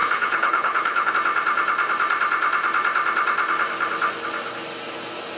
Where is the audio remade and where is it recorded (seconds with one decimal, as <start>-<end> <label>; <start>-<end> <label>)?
0.0-1.1 remade; 1.1-5.4 recorded